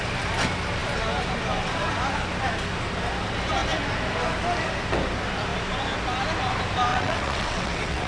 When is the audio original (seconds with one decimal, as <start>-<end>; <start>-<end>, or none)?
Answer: 0.0-6.9